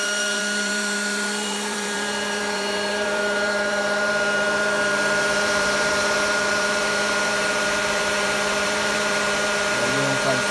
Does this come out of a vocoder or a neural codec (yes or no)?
yes